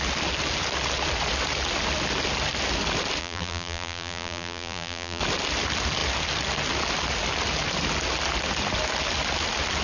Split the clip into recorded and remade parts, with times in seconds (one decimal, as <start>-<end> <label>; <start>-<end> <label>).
0.0-3.2 recorded; 3.2-5.2 remade; 5.2-9.8 recorded